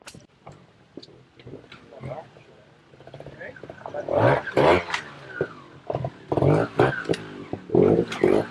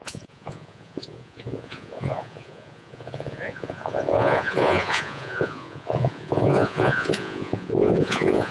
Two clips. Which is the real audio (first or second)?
first